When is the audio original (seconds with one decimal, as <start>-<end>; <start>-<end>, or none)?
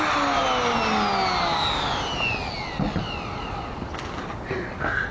0.0-5.1